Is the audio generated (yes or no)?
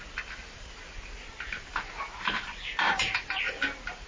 no